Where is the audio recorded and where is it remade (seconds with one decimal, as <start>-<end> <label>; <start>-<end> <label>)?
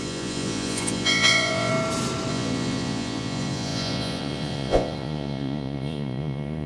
0.0-1.7 remade; 1.7-2.3 recorded; 2.3-6.7 remade